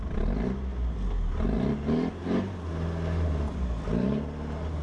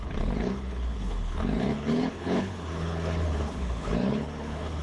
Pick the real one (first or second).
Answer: first